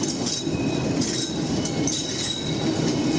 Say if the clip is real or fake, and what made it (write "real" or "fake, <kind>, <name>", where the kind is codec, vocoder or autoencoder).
real